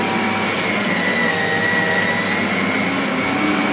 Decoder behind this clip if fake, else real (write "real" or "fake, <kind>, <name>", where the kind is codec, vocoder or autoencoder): real